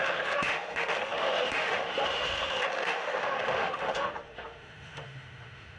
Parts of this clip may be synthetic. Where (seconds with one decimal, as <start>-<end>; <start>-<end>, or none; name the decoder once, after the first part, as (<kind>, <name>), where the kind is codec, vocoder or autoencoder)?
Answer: 0.0-5.8 (autoencoder, DAC-VAE)